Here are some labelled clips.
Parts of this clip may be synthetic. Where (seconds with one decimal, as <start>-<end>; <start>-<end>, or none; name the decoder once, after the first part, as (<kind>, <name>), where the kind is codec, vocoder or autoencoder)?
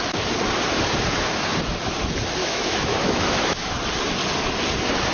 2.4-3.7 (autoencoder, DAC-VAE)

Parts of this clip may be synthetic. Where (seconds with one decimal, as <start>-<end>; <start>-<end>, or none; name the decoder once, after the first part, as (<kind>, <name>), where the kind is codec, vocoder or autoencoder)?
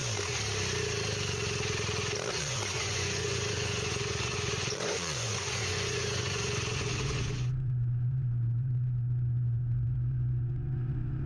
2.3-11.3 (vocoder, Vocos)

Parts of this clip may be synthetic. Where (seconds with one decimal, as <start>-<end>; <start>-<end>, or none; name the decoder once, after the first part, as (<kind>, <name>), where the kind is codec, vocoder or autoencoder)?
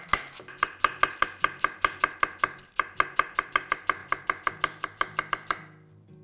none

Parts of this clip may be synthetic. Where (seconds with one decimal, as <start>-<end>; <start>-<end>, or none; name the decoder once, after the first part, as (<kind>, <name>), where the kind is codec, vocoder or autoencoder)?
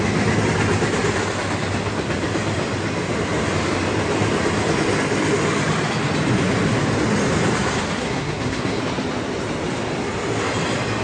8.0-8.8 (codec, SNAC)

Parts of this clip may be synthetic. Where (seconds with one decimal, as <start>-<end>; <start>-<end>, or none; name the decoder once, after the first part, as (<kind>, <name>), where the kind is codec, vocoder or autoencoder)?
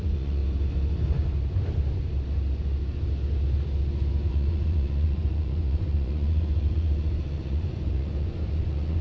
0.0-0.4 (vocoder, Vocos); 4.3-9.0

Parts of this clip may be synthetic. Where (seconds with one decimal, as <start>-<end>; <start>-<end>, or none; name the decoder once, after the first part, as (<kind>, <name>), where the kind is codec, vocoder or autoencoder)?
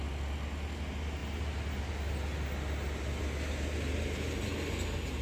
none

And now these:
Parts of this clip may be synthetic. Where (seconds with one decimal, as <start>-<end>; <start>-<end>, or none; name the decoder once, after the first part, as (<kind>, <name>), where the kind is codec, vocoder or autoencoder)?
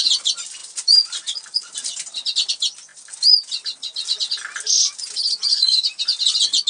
5.5-6.0 (autoencoder, DAC-VAE)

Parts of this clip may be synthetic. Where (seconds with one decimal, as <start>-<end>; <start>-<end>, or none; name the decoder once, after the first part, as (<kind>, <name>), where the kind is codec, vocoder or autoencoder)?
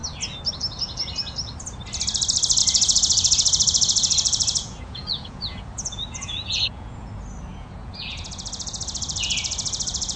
2.6-7.1 (vocoder, Vocos); 7.5-10.2